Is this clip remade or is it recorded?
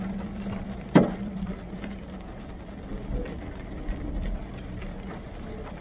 remade